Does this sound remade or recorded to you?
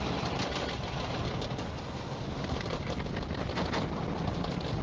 recorded